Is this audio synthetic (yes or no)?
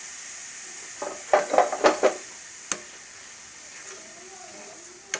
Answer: no